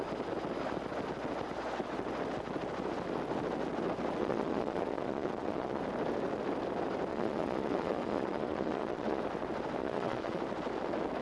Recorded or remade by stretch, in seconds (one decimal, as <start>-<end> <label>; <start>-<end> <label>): 0.0-4.2 recorded; 4.2-5.8 remade; 5.8-7.1 recorded; 7.1-9.2 remade; 9.2-9.8 recorded; 9.8-10.4 remade; 10.4-11.2 recorded